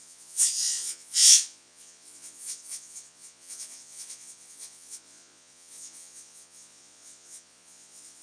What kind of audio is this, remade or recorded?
remade